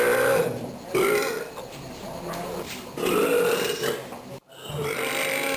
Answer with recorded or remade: recorded